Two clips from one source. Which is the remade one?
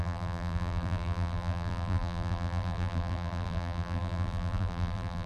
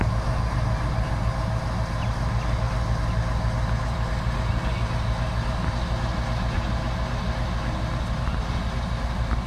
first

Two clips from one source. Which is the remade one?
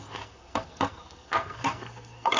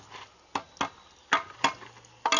first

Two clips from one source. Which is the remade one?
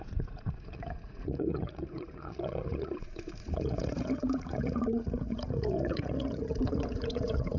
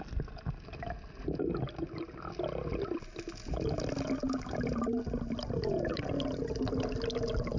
first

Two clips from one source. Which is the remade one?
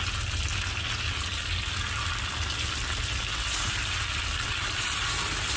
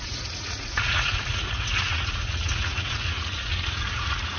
second